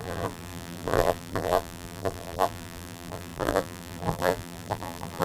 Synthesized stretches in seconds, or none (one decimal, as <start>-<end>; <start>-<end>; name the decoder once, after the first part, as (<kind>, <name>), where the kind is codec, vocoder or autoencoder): 0.0-5.2 (vocoder, BigVGAN v2)